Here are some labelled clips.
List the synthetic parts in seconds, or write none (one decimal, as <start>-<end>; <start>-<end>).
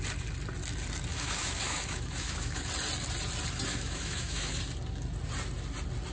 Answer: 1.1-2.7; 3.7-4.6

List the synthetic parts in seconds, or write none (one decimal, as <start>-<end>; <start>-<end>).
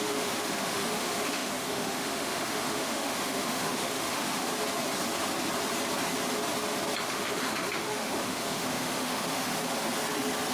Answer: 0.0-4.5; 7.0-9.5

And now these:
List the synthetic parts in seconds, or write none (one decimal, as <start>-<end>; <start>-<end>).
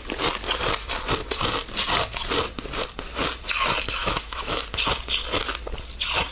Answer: 4.0-4.6